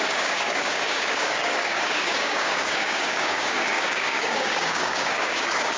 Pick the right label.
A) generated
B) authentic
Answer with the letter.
A